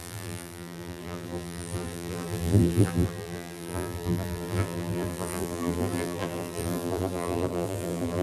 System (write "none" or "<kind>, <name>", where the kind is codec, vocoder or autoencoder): vocoder, BigVGAN v2